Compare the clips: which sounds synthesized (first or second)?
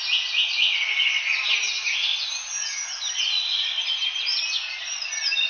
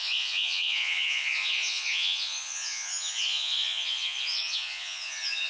second